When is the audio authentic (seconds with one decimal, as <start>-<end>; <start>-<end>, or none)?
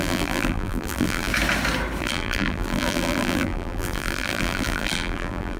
1.3-2.0